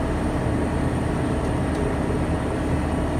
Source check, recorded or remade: remade